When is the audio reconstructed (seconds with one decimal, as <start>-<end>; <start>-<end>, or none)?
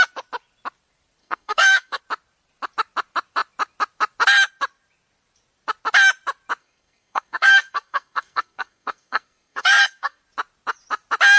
1.2-2.0; 6.6-10.2